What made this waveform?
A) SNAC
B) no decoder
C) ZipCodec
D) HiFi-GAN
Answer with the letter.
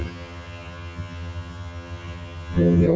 D